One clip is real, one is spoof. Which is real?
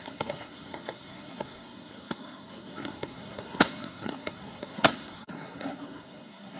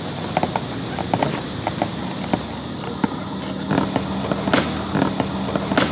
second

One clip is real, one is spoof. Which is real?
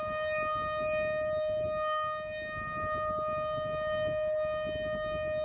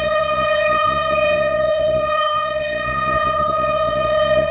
first